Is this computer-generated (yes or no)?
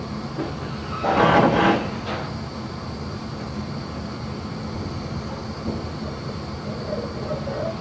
no